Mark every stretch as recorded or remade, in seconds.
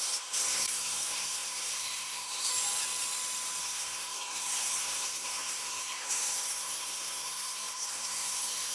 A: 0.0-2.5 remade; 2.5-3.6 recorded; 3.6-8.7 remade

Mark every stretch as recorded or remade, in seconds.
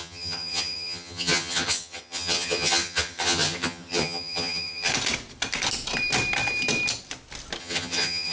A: 0.0-4.9 remade; 4.9-7.6 recorded; 7.6-8.3 remade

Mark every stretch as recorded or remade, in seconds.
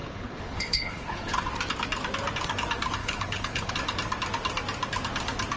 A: 0.0-1.4 remade; 1.4-3.0 recorded; 3.0-3.7 remade; 3.7-5.6 recorded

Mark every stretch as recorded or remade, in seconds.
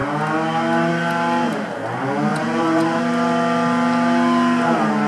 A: 0.0-2.3 recorded; 2.3-3.0 remade; 3.0-5.1 recorded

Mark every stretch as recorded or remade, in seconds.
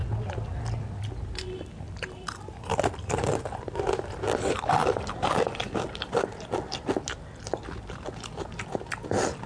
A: 0.0-9.5 recorded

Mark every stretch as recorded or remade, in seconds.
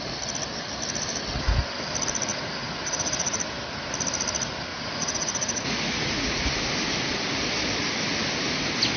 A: 0.0-2.3 recorded; 2.3-3.4 remade; 3.4-4.7 recorded; 4.7-6.4 remade; 6.4-9.0 recorded